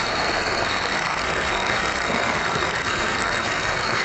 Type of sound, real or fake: fake